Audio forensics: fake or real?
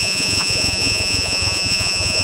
fake